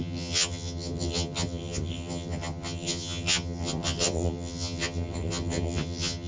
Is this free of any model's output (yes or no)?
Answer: no